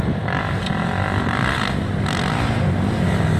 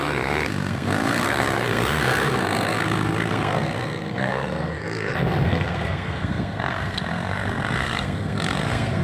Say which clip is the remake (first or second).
second